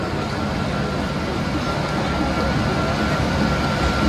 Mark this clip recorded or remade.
recorded